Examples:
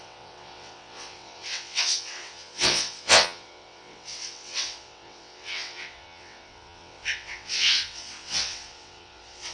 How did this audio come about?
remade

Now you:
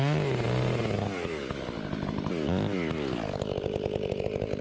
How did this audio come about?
recorded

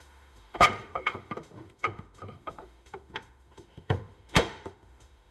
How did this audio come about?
remade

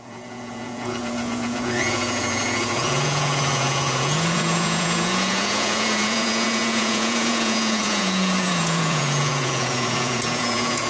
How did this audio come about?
remade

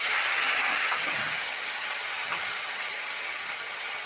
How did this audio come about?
remade